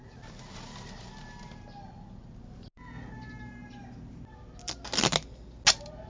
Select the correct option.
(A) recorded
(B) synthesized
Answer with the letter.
A